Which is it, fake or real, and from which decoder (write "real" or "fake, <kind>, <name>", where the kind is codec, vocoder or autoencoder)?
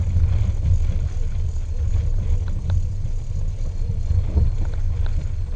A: real